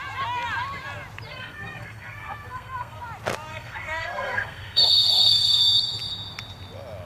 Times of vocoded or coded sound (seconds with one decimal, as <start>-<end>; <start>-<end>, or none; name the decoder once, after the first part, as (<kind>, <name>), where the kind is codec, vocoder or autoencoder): 1.3-3.0 (codec, SNAC); 3.5-5.6